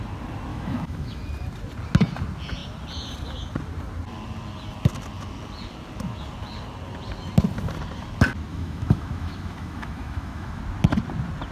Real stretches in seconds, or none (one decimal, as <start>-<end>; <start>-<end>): 0.0-0.5; 1.2-8.5; 10.6-11.5